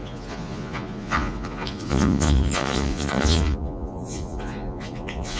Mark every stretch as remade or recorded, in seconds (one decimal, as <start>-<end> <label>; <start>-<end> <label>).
0.0-5.4 remade